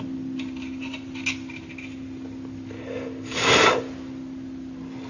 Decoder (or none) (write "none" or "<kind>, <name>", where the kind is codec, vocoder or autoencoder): none